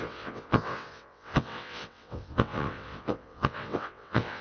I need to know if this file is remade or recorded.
remade